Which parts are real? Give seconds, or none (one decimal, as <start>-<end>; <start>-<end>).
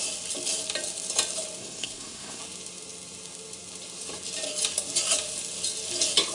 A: 0.0-1.6; 2.4-6.3